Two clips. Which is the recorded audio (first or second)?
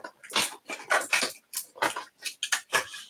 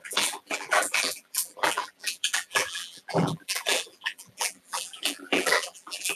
first